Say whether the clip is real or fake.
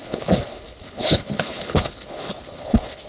fake